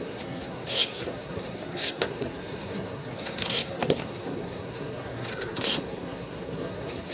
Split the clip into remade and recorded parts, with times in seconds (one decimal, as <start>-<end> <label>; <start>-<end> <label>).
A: 0.0-7.1 remade

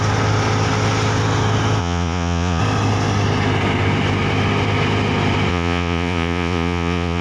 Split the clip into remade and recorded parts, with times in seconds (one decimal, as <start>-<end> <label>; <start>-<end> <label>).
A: 0.0-1.8 recorded; 1.8-2.6 remade; 2.6-5.5 recorded; 5.5-7.2 remade